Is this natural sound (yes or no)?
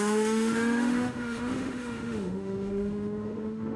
no